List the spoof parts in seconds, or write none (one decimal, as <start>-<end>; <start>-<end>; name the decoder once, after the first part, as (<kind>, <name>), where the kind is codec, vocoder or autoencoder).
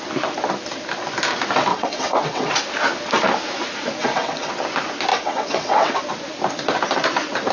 1.7-2.5 (vocoder, WaveNeXt); 4.0-4.5; 5.1-6.0